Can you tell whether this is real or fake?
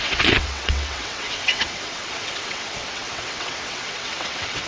fake